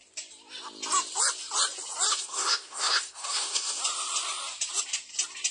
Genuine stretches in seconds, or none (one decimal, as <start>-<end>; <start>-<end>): 0.0-2.1; 3.8-5.5